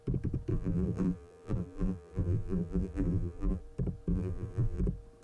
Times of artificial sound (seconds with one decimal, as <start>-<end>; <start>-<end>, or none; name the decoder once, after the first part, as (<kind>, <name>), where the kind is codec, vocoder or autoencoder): 0.5-3.6 (vocoder, BigVGAN v2); 4.1-4.8